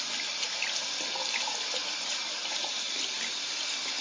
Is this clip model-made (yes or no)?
no